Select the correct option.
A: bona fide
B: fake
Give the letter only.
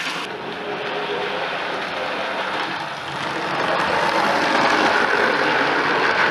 A